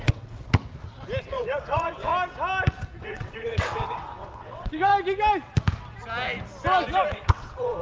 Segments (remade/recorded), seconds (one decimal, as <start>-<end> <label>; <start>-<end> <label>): 0.0-0.4 remade; 0.4-1.2 recorded; 1.2-2.1 remade; 2.1-3.0 recorded; 3.0-4.9 remade; 4.9-7.1 recorded; 7.1-7.8 remade